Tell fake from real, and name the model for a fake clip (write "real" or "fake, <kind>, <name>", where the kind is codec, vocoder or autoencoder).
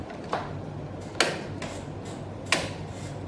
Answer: real